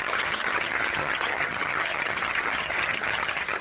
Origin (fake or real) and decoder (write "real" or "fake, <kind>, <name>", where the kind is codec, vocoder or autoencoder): fake, vocoder, HiFi-GAN